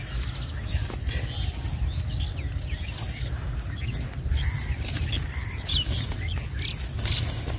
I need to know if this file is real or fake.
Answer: real